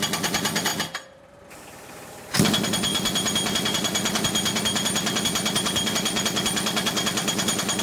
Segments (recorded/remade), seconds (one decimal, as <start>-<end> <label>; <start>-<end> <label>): 0.0-7.8 recorded